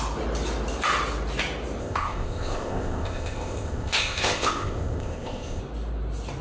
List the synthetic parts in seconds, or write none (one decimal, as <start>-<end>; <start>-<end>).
1.8-5.6